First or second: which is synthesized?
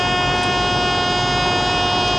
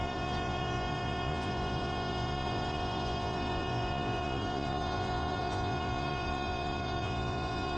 second